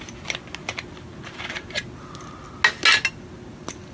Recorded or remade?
recorded